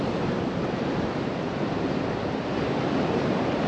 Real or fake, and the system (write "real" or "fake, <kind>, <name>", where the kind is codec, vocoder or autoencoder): fake, vocoder, BigVGAN v2